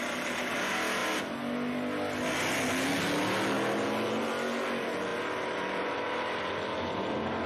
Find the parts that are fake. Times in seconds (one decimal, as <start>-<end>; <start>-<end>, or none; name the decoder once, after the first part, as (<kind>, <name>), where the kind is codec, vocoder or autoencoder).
5.1-6.4 (vocoder, BigVGAN v2)